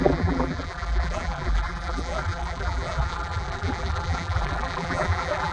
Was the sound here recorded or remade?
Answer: remade